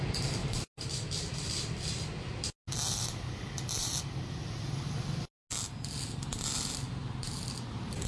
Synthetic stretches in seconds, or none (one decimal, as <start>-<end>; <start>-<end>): none